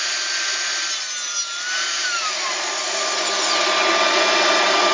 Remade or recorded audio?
recorded